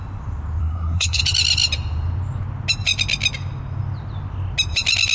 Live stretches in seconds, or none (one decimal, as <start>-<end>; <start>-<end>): 0.0-0.6; 1.2-5.1